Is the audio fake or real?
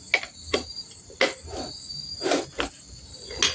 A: real